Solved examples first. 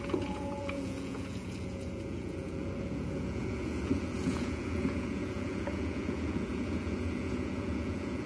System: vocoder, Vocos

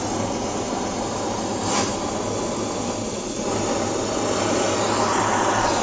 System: none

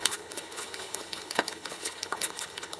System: codec, HILCodec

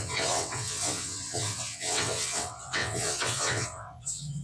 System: vocoder, WaveNeXt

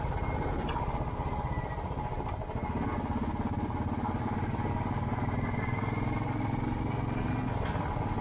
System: none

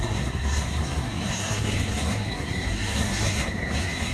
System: codec, SNAC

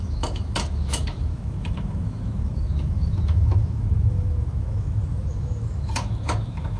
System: autoencoder, DAC-VAE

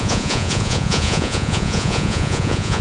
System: vocoder, Vocos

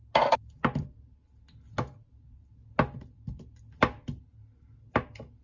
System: none